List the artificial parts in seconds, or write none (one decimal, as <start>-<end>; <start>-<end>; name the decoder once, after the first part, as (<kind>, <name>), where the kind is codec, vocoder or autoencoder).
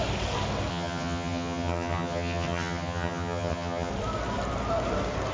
0.7-3.9 (vocoder, HiFi-GAN)